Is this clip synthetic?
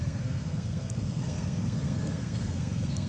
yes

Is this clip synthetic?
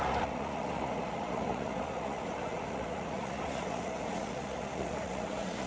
yes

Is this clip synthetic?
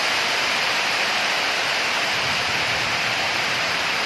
yes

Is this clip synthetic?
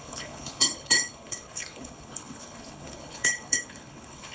yes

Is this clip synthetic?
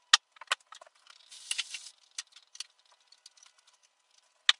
no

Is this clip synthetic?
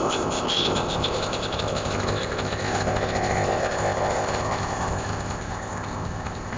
yes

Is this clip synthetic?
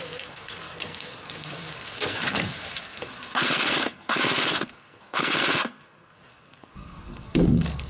yes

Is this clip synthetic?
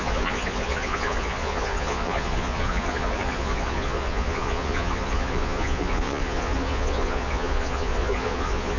yes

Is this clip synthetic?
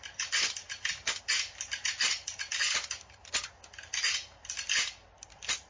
no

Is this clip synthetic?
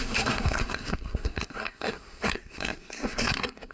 yes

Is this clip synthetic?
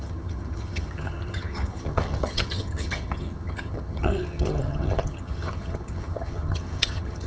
yes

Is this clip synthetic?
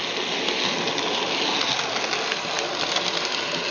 no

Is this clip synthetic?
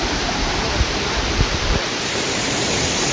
yes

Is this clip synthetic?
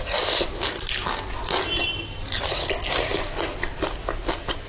no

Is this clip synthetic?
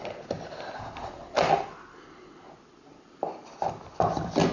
no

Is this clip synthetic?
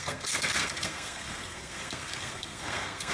yes